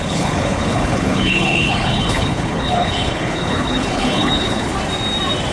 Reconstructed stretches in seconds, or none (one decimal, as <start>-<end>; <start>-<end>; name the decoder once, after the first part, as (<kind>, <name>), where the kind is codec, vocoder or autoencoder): 0.0-4.7 (codec, HILCodec)